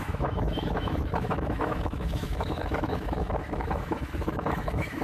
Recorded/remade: remade